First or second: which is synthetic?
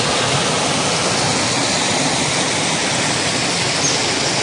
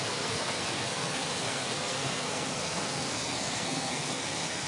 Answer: second